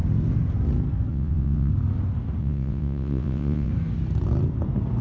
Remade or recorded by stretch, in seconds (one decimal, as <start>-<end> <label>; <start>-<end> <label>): 0.0-1.1 recorded; 1.1-1.7 remade; 1.7-2.4 recorded; 2.4-3.7 remade; 3.7-5.0 recorded